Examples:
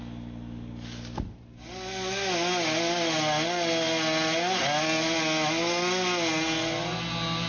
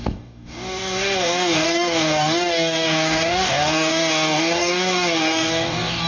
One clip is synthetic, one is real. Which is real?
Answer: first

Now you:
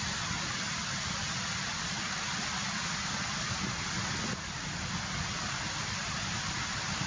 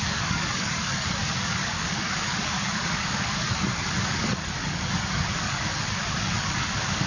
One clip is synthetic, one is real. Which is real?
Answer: first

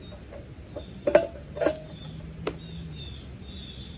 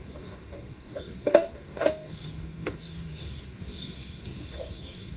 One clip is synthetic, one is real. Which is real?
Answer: first